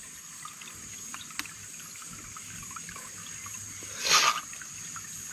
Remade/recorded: recorded